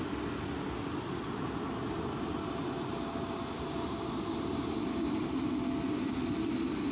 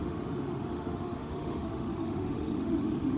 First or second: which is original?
first